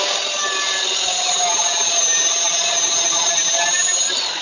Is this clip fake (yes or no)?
no